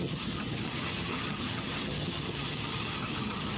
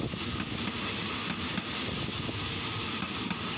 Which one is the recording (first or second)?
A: second